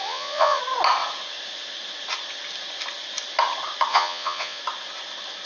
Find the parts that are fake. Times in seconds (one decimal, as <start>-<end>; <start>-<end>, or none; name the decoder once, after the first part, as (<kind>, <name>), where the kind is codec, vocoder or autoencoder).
0.0-0.6 (vocoder, Vocos); 3.9-4.6